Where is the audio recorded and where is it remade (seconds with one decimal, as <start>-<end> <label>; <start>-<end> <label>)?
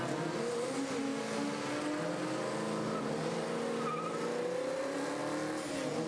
0.0-6.1 recorded